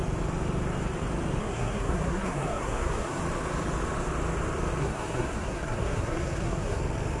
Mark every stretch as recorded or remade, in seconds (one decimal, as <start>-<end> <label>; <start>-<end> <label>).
0.0-1.4 recorded; 1.4-3.2 remade; 3.2-4.8 recorded; 4.8-6.8 remade; 6.8-7.2 recorded